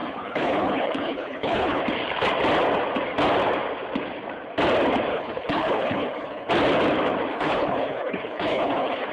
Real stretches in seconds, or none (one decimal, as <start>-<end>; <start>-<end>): 1.8-5.1; 6.5-7.3